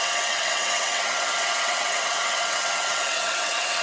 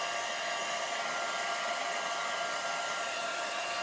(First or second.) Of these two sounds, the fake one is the first